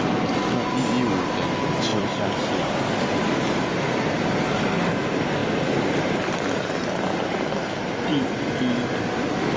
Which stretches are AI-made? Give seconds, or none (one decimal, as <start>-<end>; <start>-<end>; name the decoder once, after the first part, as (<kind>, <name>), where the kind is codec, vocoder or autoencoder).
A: 1.9-3.7 (vocoder, BigVGAN v2); 5.4-6.8